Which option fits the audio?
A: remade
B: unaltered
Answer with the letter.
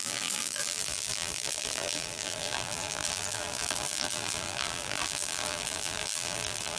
A